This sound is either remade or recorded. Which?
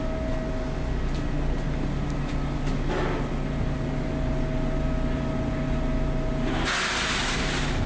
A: recorded